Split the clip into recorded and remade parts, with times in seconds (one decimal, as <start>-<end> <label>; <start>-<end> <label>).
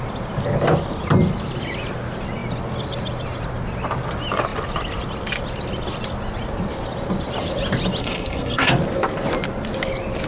0.0-8.0 recorded; 8.0-8.7 remade; 8.7-10.3 recorded